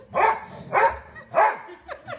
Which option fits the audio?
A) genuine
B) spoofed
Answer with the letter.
A